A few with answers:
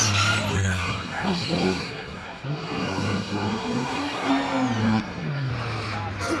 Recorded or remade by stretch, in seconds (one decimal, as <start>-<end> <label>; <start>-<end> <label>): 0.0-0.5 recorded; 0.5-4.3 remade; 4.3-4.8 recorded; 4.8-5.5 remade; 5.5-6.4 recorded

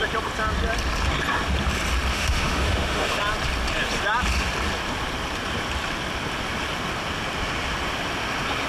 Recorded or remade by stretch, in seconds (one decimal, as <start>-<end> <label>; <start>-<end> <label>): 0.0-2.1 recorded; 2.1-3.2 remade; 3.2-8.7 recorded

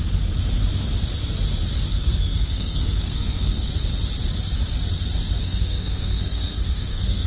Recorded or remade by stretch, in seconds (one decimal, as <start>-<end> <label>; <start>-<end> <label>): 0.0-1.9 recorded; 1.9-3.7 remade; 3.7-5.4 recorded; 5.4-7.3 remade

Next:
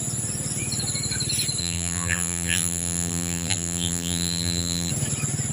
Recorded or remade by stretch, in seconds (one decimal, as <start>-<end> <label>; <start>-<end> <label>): 0.0-1.6 recorded; 1.6-4.9 remade; 4.9-5.5 recorded

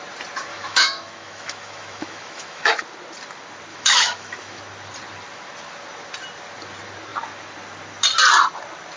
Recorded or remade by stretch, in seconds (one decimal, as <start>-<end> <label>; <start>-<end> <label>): 0.0-0.5 recorded; 0.5-2.8 remade; 2.8-3.7 recorded; 3.7-4.6 remade; 4.6-9.0 recorded

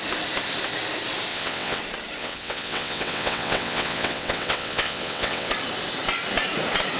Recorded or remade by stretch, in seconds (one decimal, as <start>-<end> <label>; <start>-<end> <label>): 0.0-1.3 recorded; 1.3-1.8 remade; 1.8-2.2 recorded; 2.2-5.5 remade; 5.5-7.0 recorded

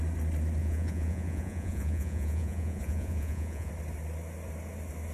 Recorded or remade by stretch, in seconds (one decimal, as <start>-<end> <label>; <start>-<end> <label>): 0.0-0.6 recorded; 0.6-3.7 remade; 3.7-5.1 recorded